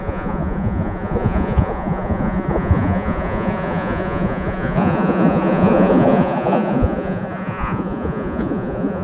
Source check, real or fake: fake